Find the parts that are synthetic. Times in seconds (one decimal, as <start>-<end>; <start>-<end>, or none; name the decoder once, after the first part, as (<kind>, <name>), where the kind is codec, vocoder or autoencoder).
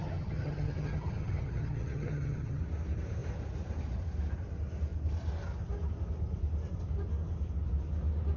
0.0-2.6 (vocoder, HiFi-GAN)